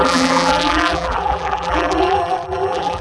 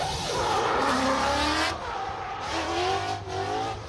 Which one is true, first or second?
second